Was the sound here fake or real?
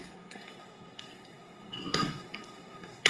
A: fake